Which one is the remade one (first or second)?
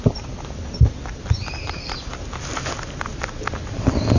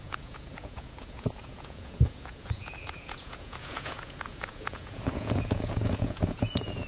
second